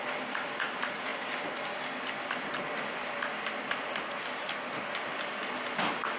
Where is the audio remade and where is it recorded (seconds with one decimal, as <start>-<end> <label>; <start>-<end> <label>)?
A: 0.0-6.2 recorded